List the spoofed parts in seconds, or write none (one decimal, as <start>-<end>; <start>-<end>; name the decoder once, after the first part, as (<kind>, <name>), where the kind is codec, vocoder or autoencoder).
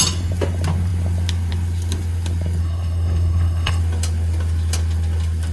2.6-3.8 (codec, SNAC)